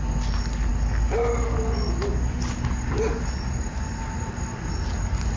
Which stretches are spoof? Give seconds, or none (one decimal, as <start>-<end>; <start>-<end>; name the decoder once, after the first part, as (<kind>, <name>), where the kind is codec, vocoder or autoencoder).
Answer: none